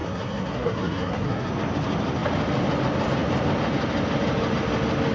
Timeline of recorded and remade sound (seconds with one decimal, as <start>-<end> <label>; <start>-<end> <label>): 0.0-1.5 remade; 1.5-5.1 recorded